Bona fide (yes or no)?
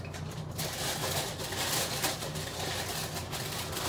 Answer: yes